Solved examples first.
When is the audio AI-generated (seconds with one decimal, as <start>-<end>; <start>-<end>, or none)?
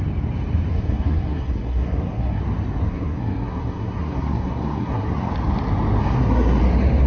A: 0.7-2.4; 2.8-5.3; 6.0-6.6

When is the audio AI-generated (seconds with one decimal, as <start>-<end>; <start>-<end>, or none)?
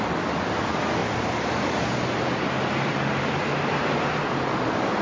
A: 1.0-4.0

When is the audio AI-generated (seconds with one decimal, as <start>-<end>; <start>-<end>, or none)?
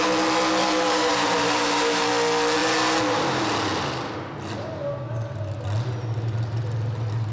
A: 0.6-2.1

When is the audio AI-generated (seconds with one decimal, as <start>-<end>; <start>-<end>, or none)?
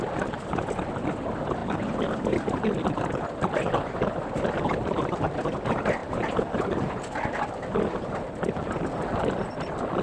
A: none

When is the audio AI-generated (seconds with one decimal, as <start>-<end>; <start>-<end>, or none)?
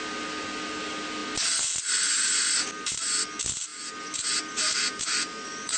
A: none